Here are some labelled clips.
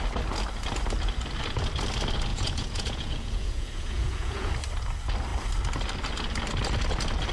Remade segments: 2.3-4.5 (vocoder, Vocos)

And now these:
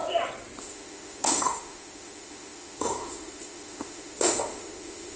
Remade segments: 0.6-5.2 (autoencoder, DAC-VAE)

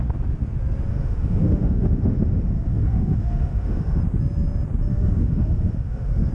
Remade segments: 0.9-4.0 (autoencoder, DAC-VAE); 4.9-6.3

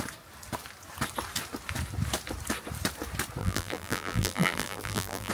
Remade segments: 3.4-5.3 (vocoder, BigVGAN v2)